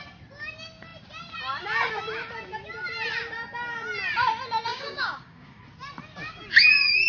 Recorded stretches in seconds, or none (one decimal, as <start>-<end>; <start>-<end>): 0.0-4.7; 5.6-7.1